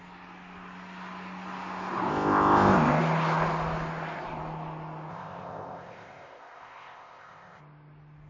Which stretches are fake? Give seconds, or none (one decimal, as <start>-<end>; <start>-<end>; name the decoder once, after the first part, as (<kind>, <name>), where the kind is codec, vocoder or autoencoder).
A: 2.1-3.0 (codec, ZipCodec); 5.1-7.6